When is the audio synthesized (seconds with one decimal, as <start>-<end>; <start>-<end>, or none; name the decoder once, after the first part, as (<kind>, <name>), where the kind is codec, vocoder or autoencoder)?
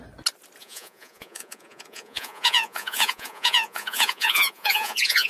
0.6-5.3 (vocoder, Vocos)